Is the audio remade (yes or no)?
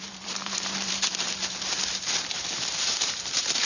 yes